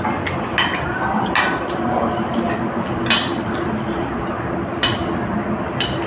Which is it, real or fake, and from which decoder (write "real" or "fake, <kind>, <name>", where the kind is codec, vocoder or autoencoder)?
real